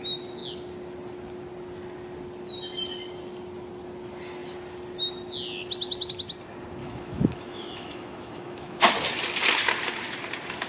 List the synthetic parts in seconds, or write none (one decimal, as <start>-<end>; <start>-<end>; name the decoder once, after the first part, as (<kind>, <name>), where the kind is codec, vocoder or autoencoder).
6.8-8.9 (autoencoder, DAC-VAE)